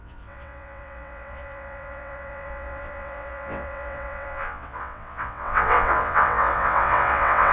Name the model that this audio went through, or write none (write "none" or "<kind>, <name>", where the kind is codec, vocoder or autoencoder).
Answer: vocoder, WaveNeXt